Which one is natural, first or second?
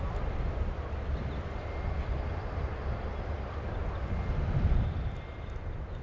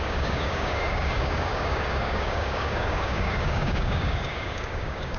first